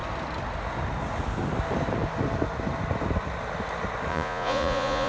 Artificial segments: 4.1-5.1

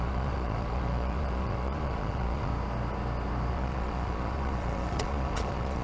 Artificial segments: 0.0-2.5; 3.5-5.8

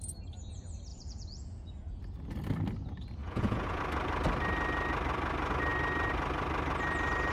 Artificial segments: 0.9-2.0; 3.2-3.8

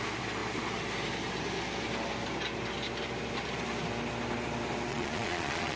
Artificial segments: 4.9-5.8

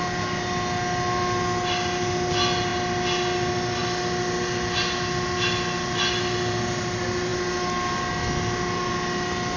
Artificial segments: none

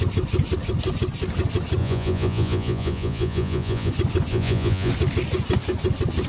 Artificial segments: 1.8-3.9; 4.3-4.9

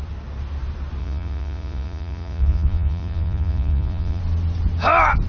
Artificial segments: 1.0-4.2

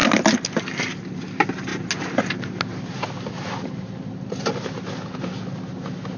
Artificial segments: none